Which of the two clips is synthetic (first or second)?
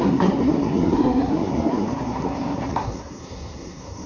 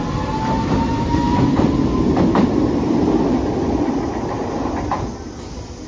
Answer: first